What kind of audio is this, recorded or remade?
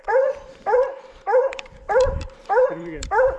remade